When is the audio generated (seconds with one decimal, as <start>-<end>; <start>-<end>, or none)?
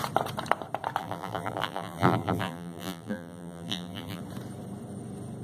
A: 1.0-4.2